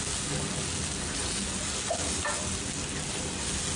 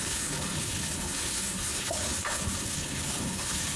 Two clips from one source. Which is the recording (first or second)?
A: first